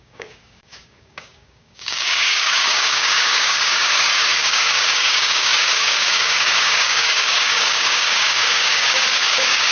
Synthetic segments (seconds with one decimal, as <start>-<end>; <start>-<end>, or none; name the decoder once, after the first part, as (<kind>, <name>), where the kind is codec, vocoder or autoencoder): 0.0-9.7 (codec, DAC)